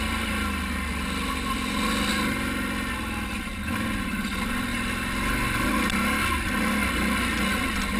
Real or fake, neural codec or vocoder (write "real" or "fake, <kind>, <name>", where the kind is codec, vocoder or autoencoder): real